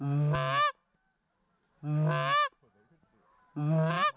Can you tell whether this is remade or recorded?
recorded